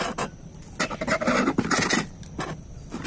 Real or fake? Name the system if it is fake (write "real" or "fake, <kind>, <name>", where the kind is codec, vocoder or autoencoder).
real